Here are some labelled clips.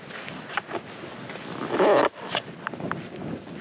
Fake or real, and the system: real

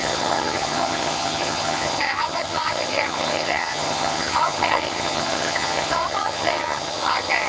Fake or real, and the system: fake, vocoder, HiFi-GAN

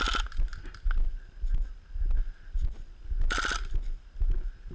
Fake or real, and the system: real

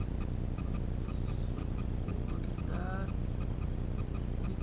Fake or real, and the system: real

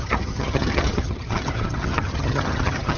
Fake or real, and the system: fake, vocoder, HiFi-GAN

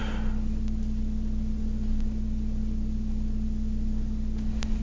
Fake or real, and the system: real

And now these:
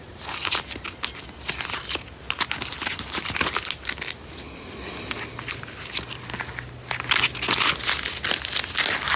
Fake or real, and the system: real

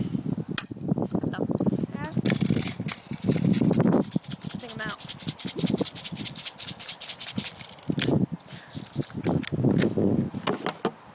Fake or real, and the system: real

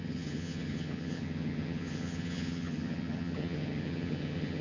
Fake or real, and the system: fake, vocoder, HiFi-GAN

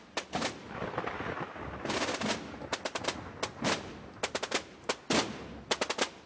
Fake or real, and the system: real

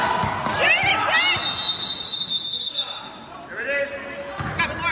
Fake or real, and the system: real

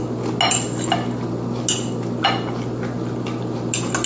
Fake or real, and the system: real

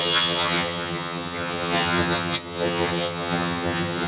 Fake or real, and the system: fake, vocoder, HiFi-GAN